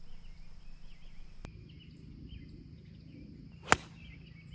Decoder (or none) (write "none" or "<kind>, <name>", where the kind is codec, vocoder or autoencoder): none